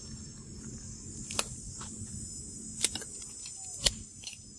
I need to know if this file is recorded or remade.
recorded